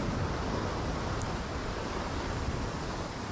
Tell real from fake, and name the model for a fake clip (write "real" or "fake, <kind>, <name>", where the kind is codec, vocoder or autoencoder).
real